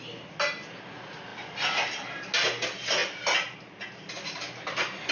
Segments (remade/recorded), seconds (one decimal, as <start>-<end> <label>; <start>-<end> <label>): 0.0-5.1 recorded